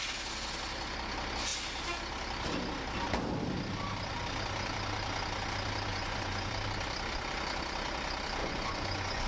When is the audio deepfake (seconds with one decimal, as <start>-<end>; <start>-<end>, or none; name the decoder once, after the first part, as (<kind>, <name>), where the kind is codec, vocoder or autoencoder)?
5.9-6.5 (vocoder, Vocos); 8.4-9.3

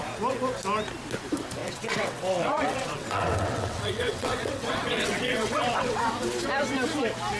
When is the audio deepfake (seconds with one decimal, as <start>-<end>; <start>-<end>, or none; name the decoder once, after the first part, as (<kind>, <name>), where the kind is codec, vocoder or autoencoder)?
1.6-6.0 (vocoder, WaveNeXt)

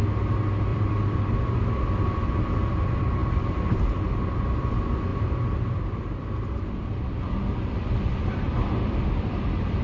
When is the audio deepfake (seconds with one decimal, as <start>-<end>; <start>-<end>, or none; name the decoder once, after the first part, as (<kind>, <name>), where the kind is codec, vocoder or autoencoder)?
0.7-1.8 (vocoder, BigVGAN v2); 3.2-3.8; 5.1-9.3

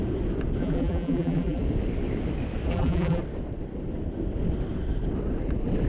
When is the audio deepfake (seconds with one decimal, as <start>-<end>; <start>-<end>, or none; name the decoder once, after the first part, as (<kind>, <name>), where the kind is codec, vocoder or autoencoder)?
0.6-1.6 (vocoder, BigVGAN v2); 2.7-3.2

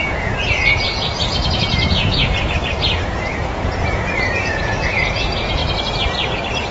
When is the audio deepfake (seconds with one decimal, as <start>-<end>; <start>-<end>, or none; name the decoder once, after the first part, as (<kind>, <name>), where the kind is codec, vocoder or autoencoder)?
0.0-5.6 (vocoder, Vocos)

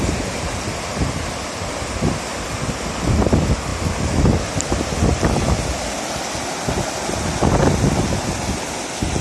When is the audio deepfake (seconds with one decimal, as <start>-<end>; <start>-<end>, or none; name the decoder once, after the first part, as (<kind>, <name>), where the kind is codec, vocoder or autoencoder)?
none

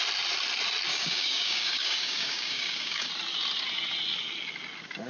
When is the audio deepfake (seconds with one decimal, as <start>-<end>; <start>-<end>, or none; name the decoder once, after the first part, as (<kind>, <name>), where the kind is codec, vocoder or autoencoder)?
0.9-3.1 (codec, DAC)

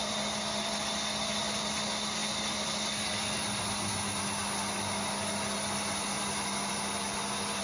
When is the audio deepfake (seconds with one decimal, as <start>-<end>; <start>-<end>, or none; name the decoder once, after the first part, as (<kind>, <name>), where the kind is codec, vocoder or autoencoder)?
none